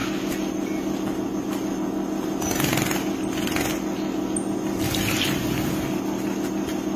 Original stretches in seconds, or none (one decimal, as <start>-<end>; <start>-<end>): 0.0-7.0